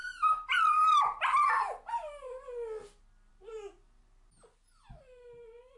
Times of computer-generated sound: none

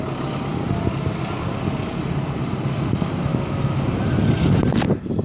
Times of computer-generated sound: 0.0-0.5 (vocoder, BigVGAN v2); 2.0-3.3

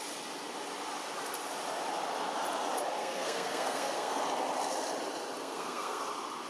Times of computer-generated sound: 3.0-4.2 (codec, SNAC); 5.4-6.0

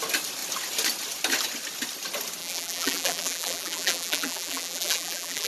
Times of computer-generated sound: 2.4-5.5 (vocoder, BigVGAN v2)

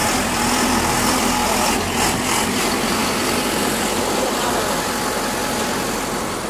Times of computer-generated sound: none

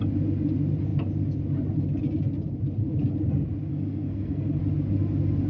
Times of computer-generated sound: 3.7-4.6 (codec, SNAC)

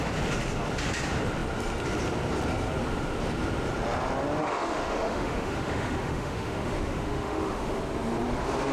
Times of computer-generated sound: 4.4-7.8 (autoencoder, DAC-VAE)